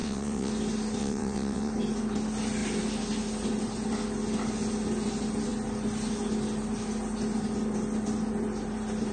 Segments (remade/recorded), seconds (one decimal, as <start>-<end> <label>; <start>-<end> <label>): 0.0-0.5 remade; 0.5-1.0 recorded; 1.0-1.7 remade; 1.7-9.1 recorded